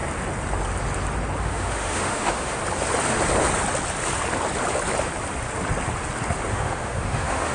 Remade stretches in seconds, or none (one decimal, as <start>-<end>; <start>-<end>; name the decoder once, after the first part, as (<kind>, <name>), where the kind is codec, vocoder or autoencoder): 1.4-2.6 (autoencoder, DAC-VAE); 6.5-7.5